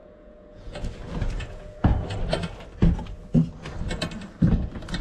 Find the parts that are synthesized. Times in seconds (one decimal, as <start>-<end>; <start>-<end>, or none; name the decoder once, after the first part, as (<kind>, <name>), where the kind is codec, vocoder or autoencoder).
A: 0.0-1.9 (vocoder, Vocos)